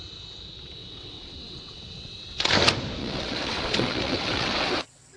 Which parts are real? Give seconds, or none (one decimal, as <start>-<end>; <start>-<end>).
0.0-0.6; 2.5-3.0